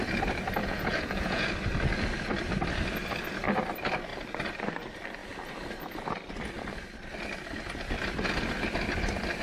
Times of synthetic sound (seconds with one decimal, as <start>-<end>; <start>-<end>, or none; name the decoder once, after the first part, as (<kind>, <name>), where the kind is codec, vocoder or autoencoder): 0.6-1.5 (vocoder, Vocos)